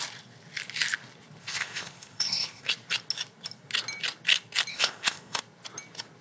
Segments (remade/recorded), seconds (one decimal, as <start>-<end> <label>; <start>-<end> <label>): 0.0-1.4 recorded; 1.4-2.7 remade; 2.7-4.7 recorded; 4.7-5.4 remade; 5.4-6.2 recorded